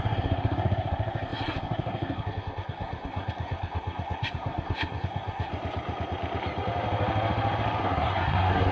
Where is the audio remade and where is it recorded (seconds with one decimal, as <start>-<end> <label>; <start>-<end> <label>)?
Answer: 0.0-5.5 remade; 5.5-7.8 recorded; 7.8-8.7 remade